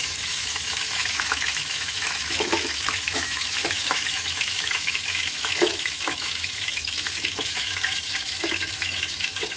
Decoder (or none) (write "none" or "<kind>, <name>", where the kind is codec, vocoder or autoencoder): autoencoder, DAC-VAE